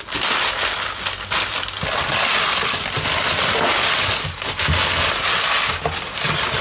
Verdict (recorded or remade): recorded